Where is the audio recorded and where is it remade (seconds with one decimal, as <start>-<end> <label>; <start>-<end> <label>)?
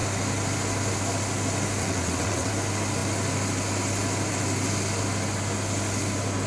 0.0-1.8 recorded; 1.8-2.5 remade; 2.5-6.5 recorded